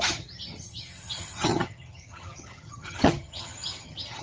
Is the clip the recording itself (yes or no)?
no